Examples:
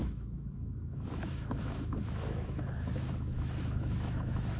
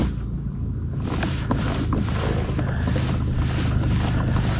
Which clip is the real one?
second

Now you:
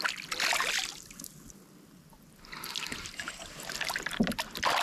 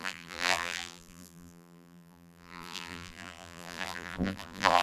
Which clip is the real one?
first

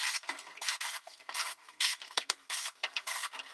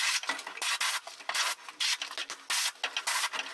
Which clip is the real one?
second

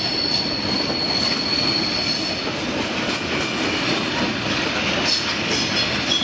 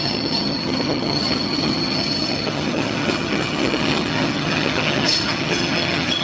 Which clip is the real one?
first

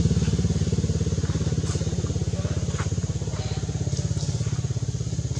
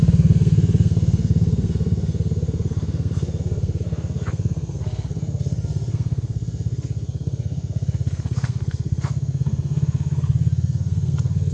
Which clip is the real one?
first